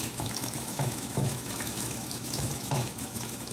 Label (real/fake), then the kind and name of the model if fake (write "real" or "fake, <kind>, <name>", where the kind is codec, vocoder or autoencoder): fake, autoencoder, DAC-VAE